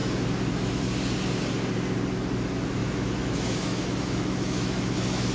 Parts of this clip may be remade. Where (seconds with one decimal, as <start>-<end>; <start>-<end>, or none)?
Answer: 2.8-5.3